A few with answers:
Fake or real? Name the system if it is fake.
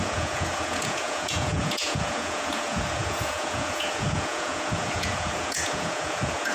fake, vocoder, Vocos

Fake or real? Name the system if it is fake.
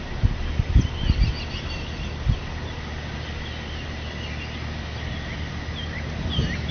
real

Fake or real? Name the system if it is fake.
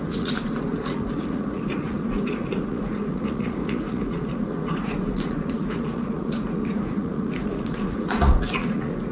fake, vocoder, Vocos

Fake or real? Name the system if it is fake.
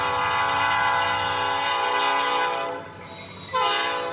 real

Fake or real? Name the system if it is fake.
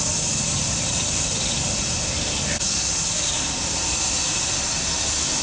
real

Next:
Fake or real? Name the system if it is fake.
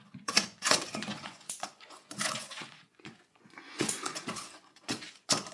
fake, vocoder, Vocos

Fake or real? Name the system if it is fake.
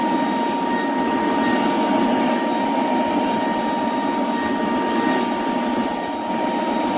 real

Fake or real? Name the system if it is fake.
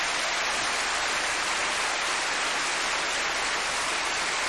real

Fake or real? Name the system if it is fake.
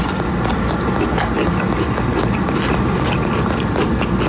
real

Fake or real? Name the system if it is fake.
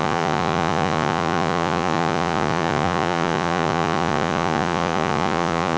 fake, vocoder, Vocos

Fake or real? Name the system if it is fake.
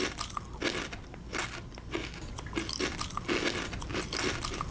real